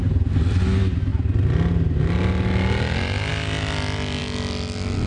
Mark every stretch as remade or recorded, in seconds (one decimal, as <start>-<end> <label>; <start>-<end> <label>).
0.0-5.1 recorded